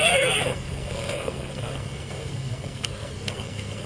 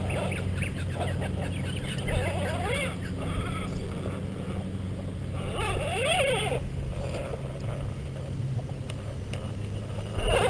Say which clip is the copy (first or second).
first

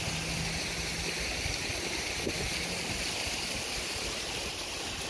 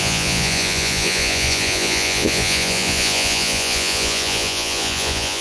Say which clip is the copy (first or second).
second